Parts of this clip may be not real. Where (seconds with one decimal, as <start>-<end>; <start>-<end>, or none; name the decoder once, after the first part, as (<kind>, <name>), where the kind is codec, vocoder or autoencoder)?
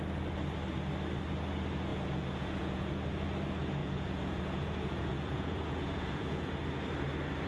1.9-2.9 (vocoder, Vocos); 3.8-6.5